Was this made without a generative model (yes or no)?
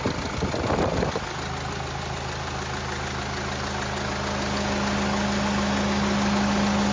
yes